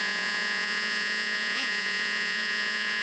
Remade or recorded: remade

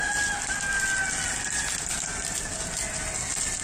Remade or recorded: recorded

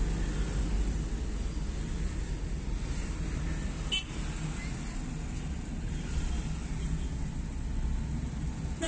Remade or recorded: recorded